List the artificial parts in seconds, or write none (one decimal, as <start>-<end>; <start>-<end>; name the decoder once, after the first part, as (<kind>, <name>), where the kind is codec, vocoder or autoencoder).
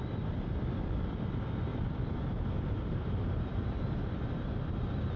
1.7-4.0 (vocoder, BigVGAN v2)